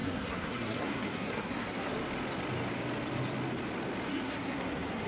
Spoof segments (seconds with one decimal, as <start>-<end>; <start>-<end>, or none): 0.0-1.9; 4.1-5.1